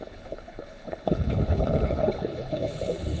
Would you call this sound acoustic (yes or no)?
no